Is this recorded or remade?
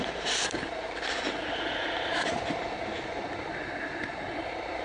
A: remade